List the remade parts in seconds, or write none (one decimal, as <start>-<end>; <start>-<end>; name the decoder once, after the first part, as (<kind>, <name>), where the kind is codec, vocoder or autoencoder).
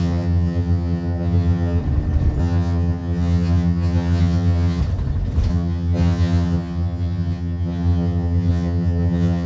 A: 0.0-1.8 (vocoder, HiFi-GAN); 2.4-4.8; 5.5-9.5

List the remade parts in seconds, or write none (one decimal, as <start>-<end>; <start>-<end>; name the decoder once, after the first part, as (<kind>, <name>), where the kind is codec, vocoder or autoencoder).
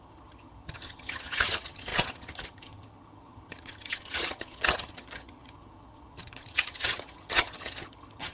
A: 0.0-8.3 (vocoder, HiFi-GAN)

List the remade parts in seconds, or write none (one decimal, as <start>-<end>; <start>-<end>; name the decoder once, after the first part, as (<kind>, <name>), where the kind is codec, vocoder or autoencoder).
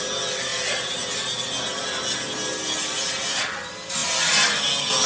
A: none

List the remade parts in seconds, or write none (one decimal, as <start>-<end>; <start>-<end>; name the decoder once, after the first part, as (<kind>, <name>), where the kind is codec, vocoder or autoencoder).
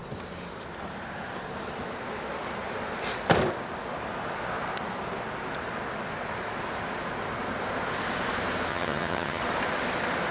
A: 8.7-9.4 (vocoder, HiFi-GAN)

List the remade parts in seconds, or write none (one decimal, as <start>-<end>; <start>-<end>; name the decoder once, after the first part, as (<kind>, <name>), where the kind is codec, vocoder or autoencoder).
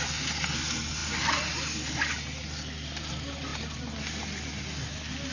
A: none